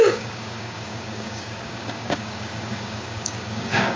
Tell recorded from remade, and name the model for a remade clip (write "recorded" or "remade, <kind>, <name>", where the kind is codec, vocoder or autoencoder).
remade, codec, DAC